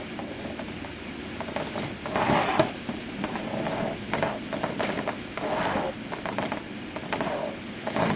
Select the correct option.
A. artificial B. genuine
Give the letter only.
B